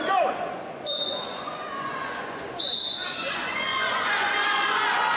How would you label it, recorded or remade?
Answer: remade